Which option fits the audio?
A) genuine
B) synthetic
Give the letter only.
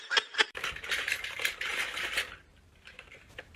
B